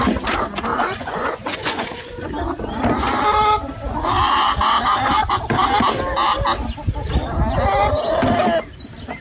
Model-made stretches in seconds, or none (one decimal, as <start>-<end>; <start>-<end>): 0.7-2.3